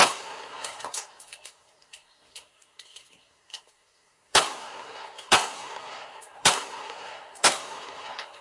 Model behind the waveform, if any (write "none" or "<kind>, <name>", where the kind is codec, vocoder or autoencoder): codec, SNAC